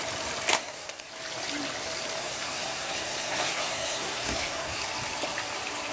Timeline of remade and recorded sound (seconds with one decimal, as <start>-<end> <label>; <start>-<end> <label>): 0.0-0.5 recorded; 0.5-1.1 remade; 1.1-2.2 recorded; 2.2-4.8 remade; 4.8-5.9 recorded

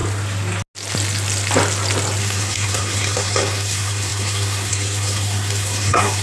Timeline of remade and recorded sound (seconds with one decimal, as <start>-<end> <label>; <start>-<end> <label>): 0.0-2.2 recorded; 2.2-6.2 remade

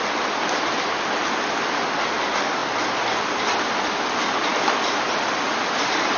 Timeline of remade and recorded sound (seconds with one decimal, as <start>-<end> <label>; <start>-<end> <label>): 0.0-6.2 recorded

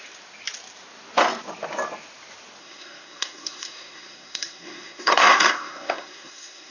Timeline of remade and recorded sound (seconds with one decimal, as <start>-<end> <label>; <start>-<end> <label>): 0.0-2.6 recorded; 2.6-6.7 remade

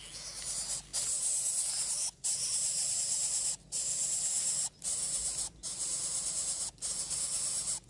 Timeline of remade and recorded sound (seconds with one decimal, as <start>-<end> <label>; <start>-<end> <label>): 0.0-7.9 recorded

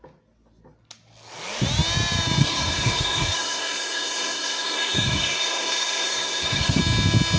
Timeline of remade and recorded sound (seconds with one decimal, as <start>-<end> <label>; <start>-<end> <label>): 0.0-2.4 recorded; 2.4-6.8 remade; 6.8-7.4 recorded

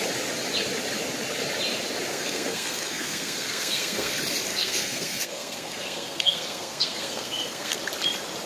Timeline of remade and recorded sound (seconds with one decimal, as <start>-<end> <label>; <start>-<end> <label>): 0.0-2.1 recorded; 2.1-4.1 remade; 4.1-4.5 recorded; 4.5-7.8 remade; 7.8-8.5 recorded

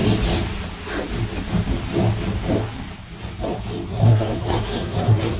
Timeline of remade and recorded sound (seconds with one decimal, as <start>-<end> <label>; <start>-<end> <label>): 0.0-3.9 recorded; 3.9-5.4 remade